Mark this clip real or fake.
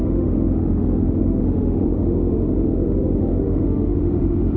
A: fake